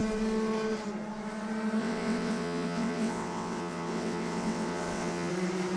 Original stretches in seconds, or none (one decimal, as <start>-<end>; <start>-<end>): 0.0-1.8; 5.3-5.8